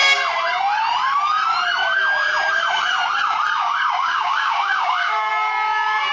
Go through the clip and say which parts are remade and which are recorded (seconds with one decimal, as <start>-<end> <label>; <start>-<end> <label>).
0.0-3.6 recorded; 3.6-5.3 remade; 5.3-6.1 recorded